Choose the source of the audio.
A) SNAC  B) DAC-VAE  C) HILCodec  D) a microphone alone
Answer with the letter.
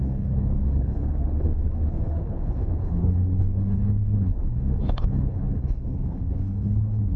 C